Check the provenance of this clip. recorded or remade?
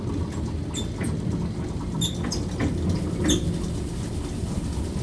recorded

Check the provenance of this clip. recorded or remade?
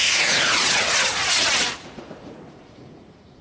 remade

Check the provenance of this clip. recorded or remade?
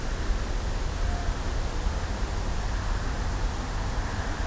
recorded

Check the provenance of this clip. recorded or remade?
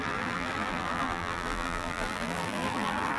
remade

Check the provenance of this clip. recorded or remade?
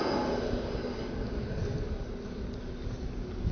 recorded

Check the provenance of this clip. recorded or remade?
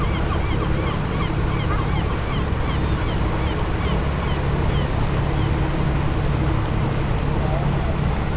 recorded